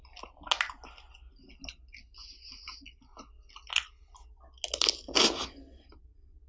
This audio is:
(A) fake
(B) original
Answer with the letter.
B